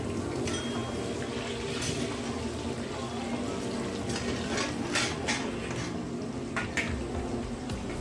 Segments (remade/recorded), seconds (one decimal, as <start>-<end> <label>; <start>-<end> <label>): 0.0-8.0 recorded